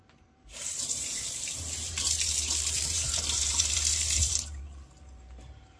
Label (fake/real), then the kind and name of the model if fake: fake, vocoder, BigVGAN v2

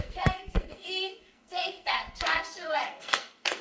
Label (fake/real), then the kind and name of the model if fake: fake, codec, SNAC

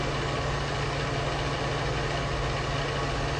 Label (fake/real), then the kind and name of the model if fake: real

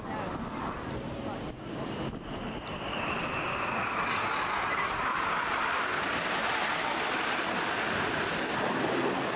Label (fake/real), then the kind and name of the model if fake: real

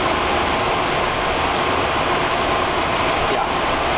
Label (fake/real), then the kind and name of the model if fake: real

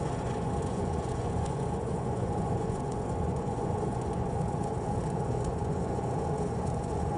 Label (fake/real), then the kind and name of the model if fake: fake, vocoder, Vocos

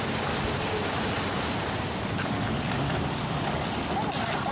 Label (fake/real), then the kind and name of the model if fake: real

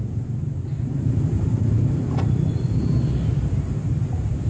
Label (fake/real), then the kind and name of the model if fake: fake, vocoder, BigVGAN v2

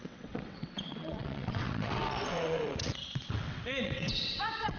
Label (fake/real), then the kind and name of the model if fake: fake, vocoder, WaveNeXt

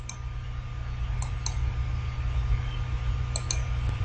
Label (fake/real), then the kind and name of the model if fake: real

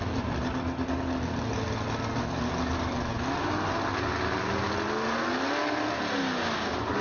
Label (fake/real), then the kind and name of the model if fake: real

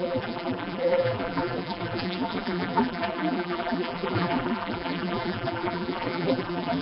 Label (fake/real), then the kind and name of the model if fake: fake, vocoder, BigVGAN v2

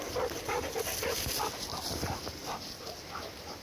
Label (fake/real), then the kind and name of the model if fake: real